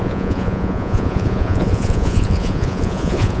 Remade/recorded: remade